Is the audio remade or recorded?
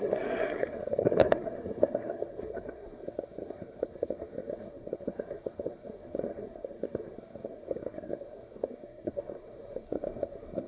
remade